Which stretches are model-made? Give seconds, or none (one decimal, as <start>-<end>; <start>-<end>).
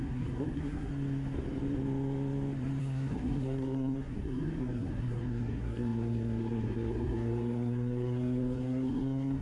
0.0-0.9; 2.8-9.4